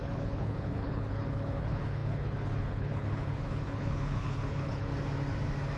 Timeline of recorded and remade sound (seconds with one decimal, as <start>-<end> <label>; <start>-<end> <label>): 0.0-4.9 remade; 4.9-5.8 recorded